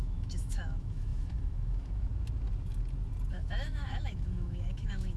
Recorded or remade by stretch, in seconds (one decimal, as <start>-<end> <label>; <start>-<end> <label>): 0.0-2.1 remade; 2.1-3.3 recorded; 3.3-5.2 remade